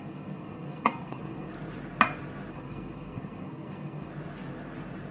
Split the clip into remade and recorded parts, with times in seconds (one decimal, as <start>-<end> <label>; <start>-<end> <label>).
0.0-1.5 remade; 1.5-2.5 recorded; 2.5-4.1 remade; 4.1-5.1 recorded